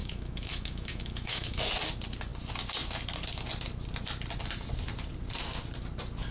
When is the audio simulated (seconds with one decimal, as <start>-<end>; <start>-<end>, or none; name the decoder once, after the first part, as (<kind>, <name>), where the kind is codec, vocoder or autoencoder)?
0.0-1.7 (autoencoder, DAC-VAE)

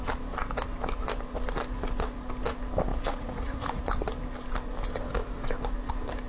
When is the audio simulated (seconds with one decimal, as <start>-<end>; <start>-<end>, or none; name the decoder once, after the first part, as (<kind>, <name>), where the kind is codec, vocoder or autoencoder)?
2.9-3.8 (vocoder, Vocos)

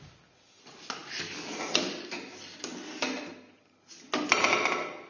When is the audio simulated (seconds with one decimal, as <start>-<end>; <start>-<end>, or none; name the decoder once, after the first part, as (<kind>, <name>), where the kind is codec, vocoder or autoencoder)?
none

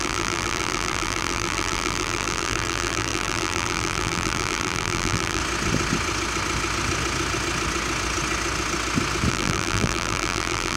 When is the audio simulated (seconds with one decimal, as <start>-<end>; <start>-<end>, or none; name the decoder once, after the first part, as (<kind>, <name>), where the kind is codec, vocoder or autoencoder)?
0.0-5.4 (vocoder, BigVGAN v2); 9.3-10.8

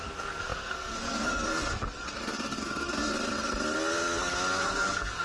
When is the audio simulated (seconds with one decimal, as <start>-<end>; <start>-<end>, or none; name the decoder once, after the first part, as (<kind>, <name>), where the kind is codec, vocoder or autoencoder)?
0.0-3.1 (codec, SNAC); 4.6-5.2

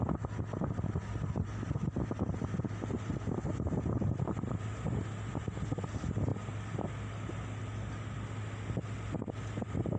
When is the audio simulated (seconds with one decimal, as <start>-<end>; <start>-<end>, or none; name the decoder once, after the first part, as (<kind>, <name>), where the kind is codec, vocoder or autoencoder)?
none

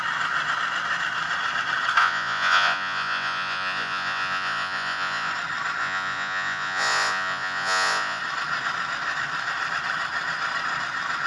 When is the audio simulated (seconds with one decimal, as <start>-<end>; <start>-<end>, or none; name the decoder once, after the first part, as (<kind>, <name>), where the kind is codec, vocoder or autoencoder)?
2.0-5.3 (vocoder, Vocos); 5.8-8.2

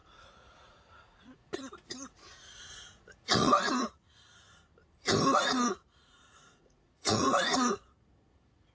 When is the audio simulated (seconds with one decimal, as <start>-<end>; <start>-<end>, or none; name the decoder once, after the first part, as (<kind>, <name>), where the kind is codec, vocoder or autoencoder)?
0.0-3.5 (vocoder, Vocos); 5.4-8.7